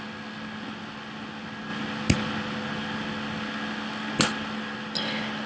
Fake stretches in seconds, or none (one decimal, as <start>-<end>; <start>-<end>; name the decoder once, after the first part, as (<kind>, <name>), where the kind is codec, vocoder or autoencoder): none